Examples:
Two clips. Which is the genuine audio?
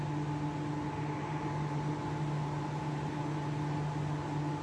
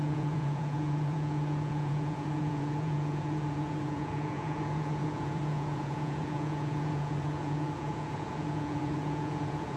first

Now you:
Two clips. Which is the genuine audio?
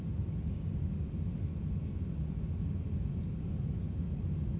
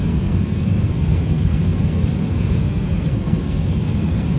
first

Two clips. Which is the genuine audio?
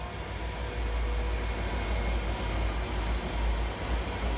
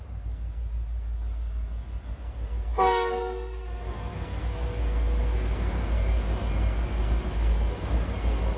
first